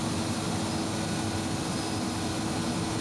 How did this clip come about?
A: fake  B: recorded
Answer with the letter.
B